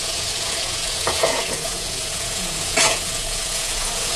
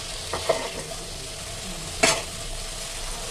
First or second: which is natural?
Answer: second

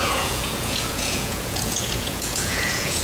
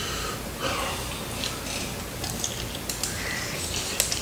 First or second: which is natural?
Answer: second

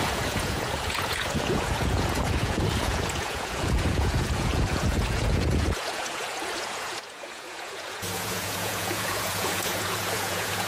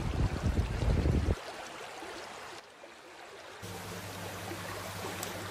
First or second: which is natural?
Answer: second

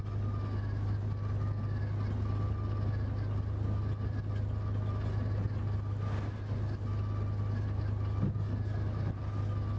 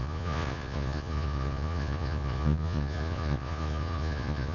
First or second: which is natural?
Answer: first